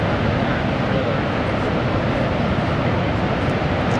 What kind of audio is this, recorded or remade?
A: recorded